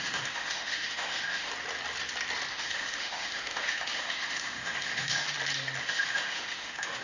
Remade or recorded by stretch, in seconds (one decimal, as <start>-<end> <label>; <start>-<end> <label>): 0.0-1.5 remade; 1.5-2.5 recorded; 2.5-5.2 remade; 5.2-5.8 recorded; 5.8-7.0 remade